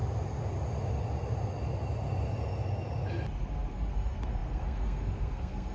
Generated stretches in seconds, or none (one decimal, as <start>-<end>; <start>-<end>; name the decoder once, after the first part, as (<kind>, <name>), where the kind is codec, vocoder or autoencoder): 3.4-5.7 (codec, SNAC)